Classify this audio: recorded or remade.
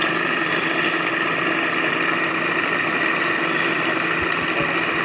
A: recorded